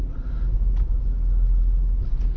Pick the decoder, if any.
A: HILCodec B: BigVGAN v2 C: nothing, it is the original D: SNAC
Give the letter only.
C